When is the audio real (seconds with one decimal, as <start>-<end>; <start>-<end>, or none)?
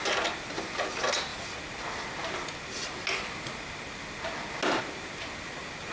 0.0-5.9